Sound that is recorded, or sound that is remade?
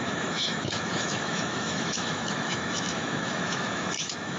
remade